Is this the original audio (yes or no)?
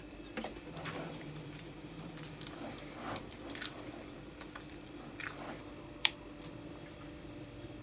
no